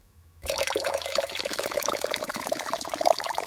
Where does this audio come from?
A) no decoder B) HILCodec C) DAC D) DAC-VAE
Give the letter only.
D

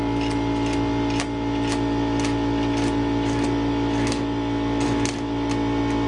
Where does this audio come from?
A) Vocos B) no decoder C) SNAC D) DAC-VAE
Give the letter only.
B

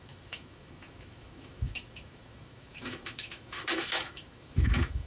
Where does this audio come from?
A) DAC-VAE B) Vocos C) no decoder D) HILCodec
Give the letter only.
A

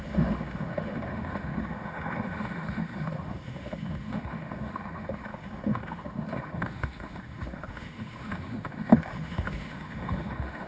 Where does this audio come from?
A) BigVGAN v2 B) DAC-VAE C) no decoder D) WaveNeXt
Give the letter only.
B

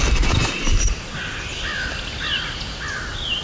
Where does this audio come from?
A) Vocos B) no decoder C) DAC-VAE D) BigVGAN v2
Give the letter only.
B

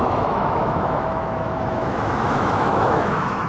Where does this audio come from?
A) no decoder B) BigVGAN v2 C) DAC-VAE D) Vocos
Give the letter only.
C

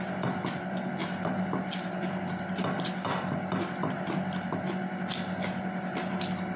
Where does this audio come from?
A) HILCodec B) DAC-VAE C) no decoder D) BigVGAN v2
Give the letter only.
C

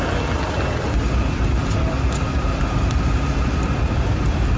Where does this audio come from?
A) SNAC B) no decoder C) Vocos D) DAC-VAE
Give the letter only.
B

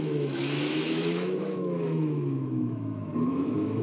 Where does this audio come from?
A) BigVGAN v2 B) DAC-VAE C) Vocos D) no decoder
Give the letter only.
B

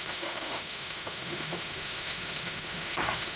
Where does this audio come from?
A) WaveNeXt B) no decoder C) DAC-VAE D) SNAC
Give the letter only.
C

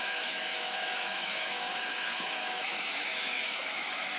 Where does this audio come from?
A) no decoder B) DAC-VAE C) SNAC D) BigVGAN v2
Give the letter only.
B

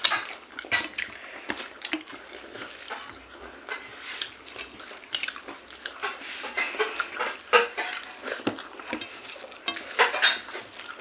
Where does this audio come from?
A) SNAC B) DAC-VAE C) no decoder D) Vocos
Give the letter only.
C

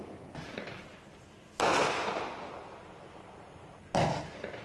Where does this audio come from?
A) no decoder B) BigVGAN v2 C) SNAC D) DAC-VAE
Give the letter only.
A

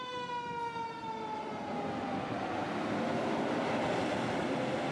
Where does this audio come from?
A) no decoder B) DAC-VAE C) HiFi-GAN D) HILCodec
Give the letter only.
A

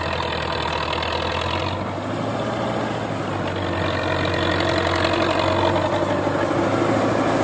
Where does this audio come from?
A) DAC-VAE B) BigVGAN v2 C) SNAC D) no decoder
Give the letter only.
D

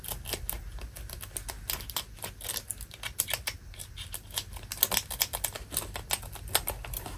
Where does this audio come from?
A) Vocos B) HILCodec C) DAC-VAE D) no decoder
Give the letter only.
D